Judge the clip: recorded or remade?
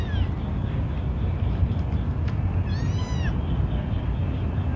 recorded